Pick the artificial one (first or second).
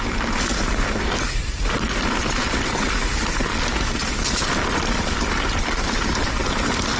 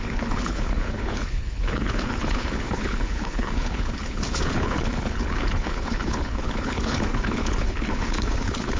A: second